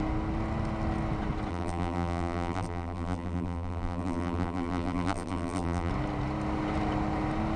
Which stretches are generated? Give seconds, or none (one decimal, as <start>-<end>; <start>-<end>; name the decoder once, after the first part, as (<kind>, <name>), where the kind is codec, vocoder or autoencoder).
1.5-5.9 (vocoder, BigVGAN v2)